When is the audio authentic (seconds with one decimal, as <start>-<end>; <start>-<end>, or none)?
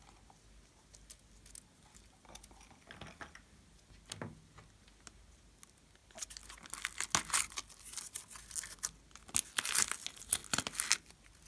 0.0-11.5